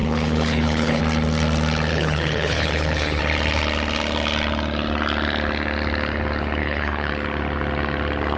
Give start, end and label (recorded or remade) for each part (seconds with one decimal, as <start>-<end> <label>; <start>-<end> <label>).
0.0-1.0 remade; 1.0-1.9 recorded; 1.9-3.2 remade; 3.2-6.6 recorded; 6.6-7.1 remade; 7.1-8.4 recorded